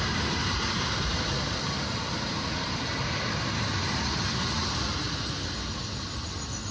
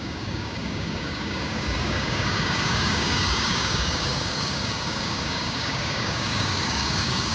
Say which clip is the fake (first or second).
second